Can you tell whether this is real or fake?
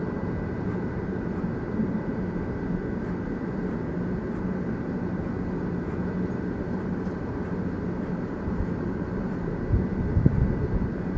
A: fake